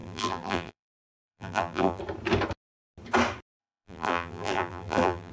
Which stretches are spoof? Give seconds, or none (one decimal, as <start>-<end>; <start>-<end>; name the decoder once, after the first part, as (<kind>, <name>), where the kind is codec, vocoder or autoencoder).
0.0-2.0 (vocoder, BigVGAN v2); 3.6-5.3